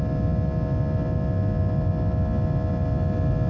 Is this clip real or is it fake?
real